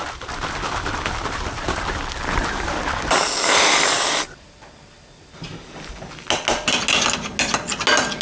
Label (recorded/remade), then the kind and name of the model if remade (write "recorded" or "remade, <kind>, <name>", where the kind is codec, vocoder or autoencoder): recorded